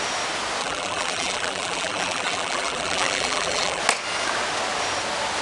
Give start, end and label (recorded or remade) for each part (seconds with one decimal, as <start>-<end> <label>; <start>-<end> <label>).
0.0-0.6 recorded; 0.6-3.8 remade; 3.8-5.4 recorded